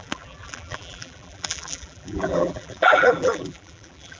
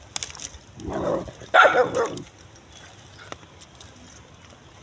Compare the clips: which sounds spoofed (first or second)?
first